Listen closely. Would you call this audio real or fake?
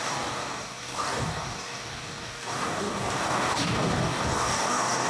fake